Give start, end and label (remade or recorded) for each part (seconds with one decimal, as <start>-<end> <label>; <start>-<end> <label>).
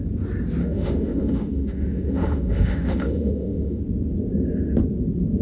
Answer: 0.0-0.6 recorded; 0.6-3.8 remade; 3.8-5.4 recorded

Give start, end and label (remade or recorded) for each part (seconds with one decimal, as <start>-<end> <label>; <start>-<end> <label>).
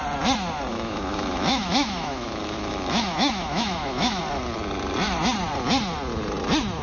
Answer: 0.0-0.7 recorded; 0.7-4.2 remade; 4.2-6.8 recorded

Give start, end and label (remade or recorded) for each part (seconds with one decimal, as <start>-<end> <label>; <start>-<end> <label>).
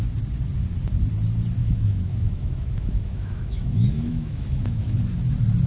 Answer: 0.0-1.6 recorded; 1.6-5.0 remade; 5.0-5.7 recorded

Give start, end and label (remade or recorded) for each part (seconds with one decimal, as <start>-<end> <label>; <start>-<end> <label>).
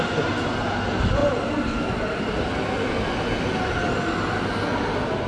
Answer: 0.0-5.3 recorded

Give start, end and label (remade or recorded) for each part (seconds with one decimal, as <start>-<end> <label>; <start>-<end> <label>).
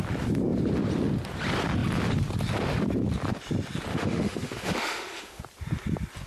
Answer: 0.0-3.9 recorded; 3.9-5.4 remade; 5.4-6.3 recorded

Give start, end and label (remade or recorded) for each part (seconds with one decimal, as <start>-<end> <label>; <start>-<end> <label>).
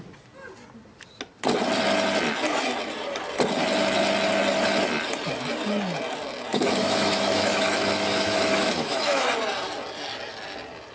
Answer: 0.0-6.5 recorded; 6.5-9.3 remade; 9.3-10.9 recorded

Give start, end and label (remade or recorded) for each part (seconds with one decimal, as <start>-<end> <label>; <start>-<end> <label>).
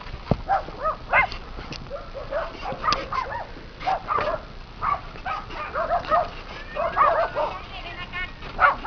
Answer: 0.0-8.9 recorded